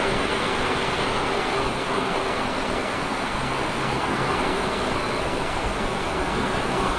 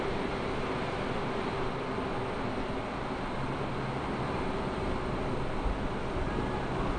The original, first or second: second